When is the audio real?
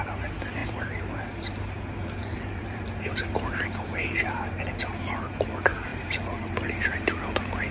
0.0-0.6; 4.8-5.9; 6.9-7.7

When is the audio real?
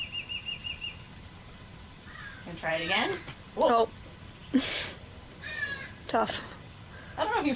0.0-0.6; 2.7-4.4; 5.5-7.6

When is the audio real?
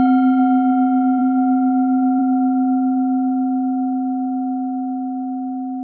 0.0-5.8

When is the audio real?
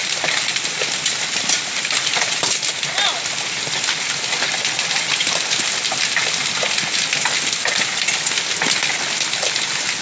2.8-10.0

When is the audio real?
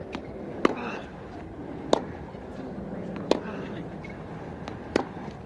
1.1-4.4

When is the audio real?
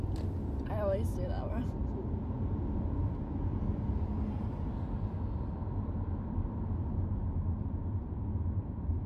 0.0-9.1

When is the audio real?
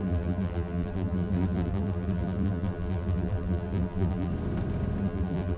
4.3-5.0